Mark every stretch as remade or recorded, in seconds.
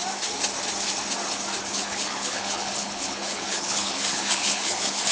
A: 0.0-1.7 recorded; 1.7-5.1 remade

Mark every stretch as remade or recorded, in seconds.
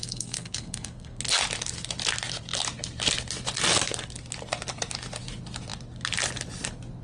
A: 0.0-1.2 remade; 1.2-7.0 recorded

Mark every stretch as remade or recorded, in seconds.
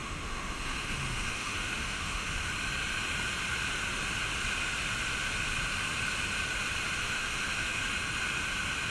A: 0.0-2.5 remade; 2.5-7.0 recorded; 7.0-7.8 remade; 7.8-8.9 recorded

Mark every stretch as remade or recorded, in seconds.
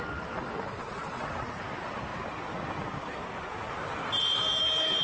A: 0.0-0.8 recorded; 0.8-1.6 remade; 1.6-5.0 recorded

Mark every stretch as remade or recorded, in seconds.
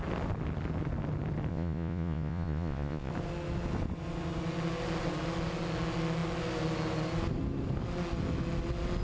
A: 0.0-1.5 recorded; 1.5-3.1 remade; 3.1-9.0 recorded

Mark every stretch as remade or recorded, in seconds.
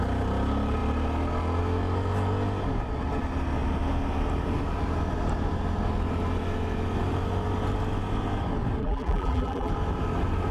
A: 0.0-8.8 recorded; 8.8-9.7 remade; 9.7-10.5 recorded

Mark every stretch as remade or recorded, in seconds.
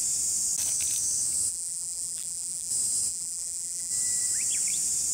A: 0.0-1.5 recorded; 1.5-2.7 remade; 2.7-3.1 recorded; 3.1-3.9 remade; 3.9-5.1 recorded